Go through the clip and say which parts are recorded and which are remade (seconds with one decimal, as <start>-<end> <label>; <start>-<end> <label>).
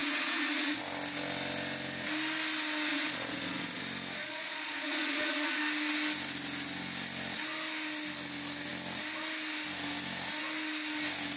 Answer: 0.0-0.8 remade; 0.8-2.9 recorded; 2.9-3.8 remade; 3.8-4.2 recorded; 4.2-5.6 remade; 5.6-11.4 recorded